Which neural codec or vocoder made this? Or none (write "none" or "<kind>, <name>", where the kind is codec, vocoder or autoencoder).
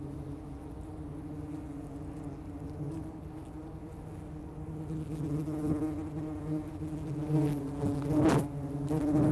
none